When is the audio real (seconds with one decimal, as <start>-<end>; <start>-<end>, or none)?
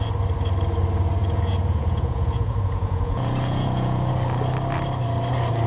0.0-1.2; 4.1-5.7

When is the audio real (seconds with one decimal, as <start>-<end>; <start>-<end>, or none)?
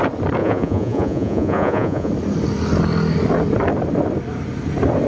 0.0-0.4; 2.1-5.1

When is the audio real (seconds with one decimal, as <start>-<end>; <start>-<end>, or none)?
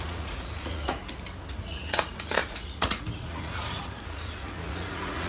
1.0-1.6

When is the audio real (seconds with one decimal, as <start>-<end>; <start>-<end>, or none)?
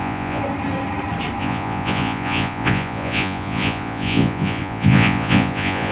0.4-1.4